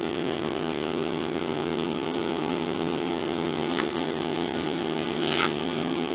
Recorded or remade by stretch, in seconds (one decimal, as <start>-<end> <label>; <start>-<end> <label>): 0.0-6.1 remade